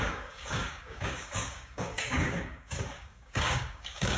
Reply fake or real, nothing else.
fake